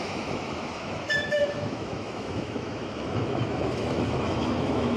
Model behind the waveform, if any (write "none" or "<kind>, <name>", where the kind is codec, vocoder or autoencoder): autoencoder, DAC-VAE